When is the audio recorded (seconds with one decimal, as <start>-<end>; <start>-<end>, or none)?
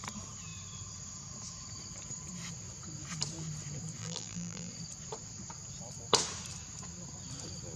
0.0-4.0; 4.7-7.8